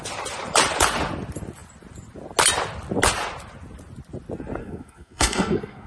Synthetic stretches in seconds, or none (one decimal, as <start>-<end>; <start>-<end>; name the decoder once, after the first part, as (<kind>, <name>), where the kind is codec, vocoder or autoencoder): 4.6-5.9 (codec, SNAC)